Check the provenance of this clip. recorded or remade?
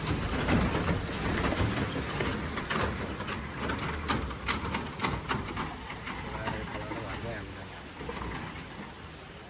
recorded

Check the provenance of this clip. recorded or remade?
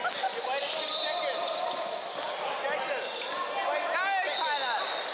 recorded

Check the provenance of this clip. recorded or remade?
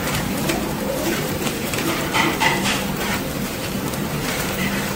remade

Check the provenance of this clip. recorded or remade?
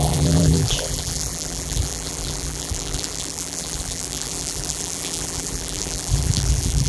remade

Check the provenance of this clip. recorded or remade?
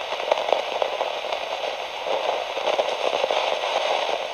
recorded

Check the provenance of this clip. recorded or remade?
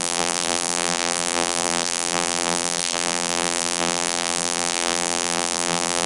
remade